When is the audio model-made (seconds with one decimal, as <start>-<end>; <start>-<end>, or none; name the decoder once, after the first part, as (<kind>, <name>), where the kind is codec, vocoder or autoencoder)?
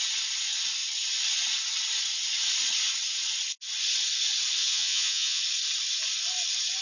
4.6-5.4 (vocoder, Vocos)